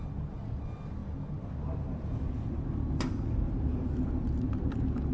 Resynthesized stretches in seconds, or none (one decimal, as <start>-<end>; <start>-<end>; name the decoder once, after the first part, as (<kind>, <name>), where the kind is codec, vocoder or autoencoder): none